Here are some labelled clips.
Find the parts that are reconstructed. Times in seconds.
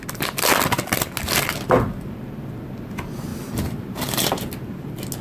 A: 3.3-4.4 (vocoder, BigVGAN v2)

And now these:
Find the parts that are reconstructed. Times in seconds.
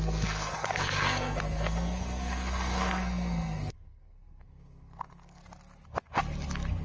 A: 0.0-5.4 (codec, SNAC)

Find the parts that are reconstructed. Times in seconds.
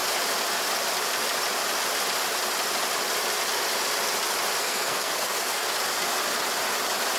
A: 4.6-5.7 (codec, SNAC)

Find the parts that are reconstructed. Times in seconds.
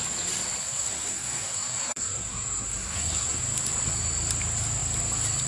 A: 0.6-3.4 (codec, SNAC)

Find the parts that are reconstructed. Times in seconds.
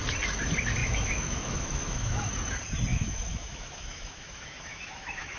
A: 0.8-2.3 (autoencoder, DAC-VAE); 2.9-5.4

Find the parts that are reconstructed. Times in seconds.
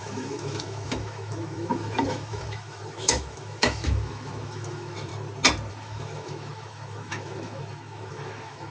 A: 0.0-5.1 (autoencoder, DAC-VAE); 5.7-8.7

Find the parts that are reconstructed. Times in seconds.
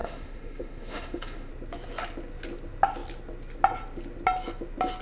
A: 0.0-1.5 (autoencoder, DAC-VAE)